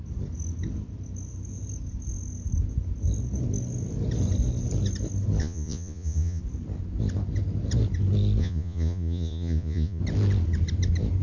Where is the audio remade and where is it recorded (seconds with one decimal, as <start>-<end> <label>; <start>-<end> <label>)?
0.0-5.4 recorded; 5.4-6.4 remade; 6.4-8.4 recorded; 8.4-10.0 remade; 10.0-11.2 recorded